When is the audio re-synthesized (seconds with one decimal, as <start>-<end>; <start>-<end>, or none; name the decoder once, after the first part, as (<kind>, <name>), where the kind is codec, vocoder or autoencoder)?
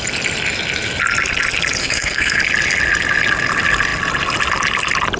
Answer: 1.8-2.4 (codec, SNAC)